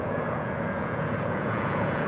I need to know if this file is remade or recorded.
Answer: remade